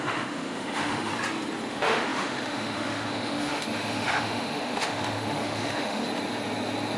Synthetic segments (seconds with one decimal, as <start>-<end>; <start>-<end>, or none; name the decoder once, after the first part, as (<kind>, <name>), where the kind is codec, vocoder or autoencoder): 0.0-1.1 (autoencoder, DAC-VAE); 1.7-6.0